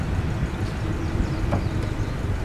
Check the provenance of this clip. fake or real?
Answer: real